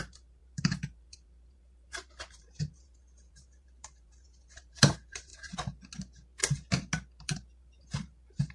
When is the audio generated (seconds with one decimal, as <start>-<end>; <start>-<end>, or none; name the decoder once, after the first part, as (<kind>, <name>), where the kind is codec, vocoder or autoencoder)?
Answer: 0.0-5.3 (vocoder, BigVGAN v2); 7.2-8.5